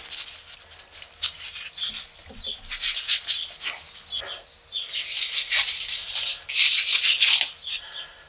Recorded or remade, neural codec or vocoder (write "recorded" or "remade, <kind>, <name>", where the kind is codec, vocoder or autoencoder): recorded